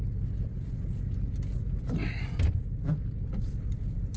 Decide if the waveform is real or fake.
real